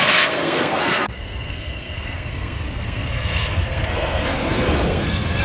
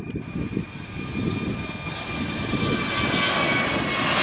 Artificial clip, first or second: first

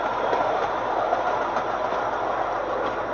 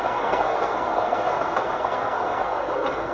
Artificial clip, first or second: second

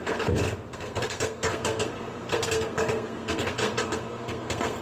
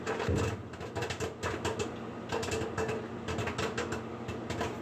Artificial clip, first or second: first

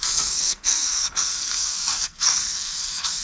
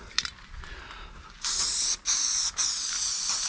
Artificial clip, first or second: first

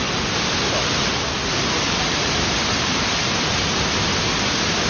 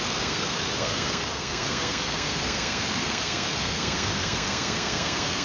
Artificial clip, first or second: second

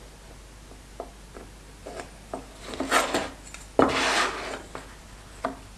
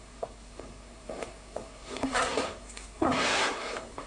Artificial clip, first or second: second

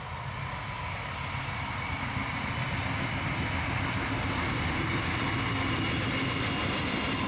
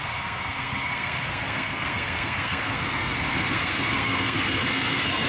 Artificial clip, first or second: second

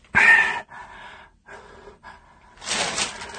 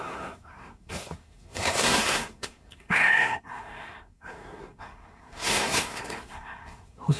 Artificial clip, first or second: second